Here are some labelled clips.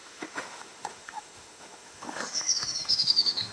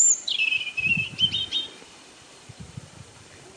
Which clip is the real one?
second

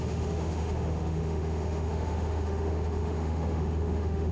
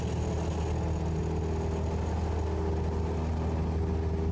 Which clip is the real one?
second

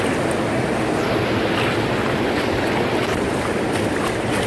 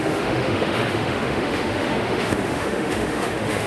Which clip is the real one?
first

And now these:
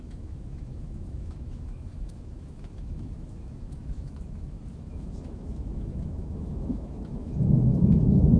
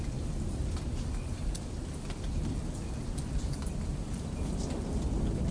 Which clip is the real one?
second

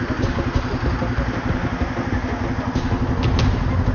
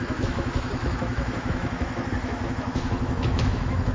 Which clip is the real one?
first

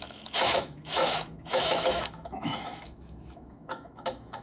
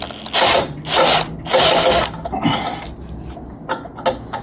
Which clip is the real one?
second